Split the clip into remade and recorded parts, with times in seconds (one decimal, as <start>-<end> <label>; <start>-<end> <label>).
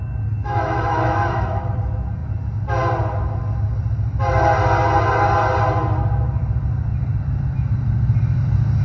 0.0-0.4 recorded; 0.4-1.7 remade; 1.7-8.8 recorded